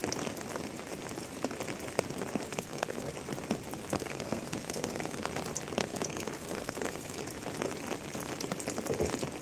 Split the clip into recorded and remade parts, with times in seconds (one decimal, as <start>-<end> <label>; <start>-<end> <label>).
0.0-2.5 recorded; 2.5-3.1 remade; 3.1-3.8 recorded; 3.8-5.3 remade; 5.3-5.8 recorded; 5.8-7.2 remade; 7.2-9.4 recorded